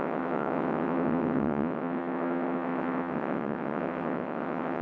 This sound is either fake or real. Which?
fake